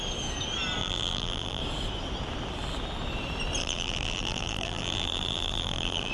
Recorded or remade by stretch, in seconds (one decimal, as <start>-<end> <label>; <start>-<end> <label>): 0.0-0.8 recorded; 0.8-1.6 remade; 1.6-3.6 recorded; 3.6-6.1 remade